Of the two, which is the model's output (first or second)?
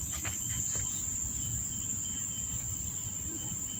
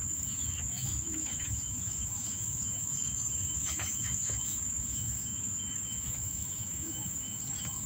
second